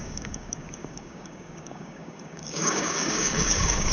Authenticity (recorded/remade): remade